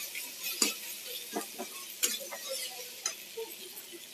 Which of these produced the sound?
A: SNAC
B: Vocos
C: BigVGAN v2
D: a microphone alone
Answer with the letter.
D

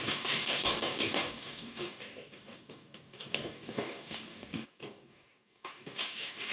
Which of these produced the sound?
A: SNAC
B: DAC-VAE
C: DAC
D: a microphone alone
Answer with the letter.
C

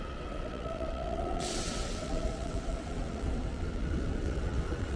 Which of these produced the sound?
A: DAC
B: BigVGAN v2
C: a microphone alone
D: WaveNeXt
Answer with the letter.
D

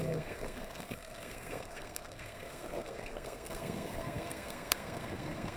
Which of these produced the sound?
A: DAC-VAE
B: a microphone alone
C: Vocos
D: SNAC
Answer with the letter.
D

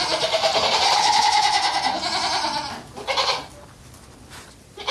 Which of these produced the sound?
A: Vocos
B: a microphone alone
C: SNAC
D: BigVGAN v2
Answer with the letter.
B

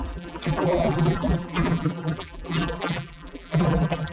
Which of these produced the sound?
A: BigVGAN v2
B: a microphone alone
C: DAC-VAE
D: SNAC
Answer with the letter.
A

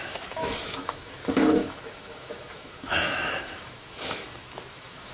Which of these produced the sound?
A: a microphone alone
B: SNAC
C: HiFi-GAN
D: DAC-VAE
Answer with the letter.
D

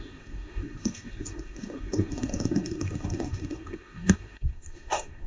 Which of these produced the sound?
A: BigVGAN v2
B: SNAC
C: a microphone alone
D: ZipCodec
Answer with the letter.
B